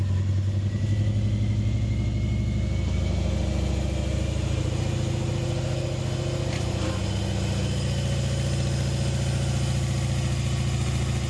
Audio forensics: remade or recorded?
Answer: recorded